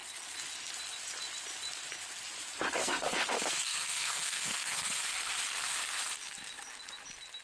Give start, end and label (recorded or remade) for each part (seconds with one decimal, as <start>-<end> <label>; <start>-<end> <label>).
0.0-2.8 recorded; 2.8-5.0 remade; 5.0-7.4 recorded